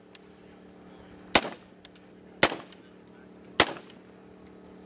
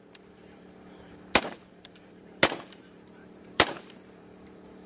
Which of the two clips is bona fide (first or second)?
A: first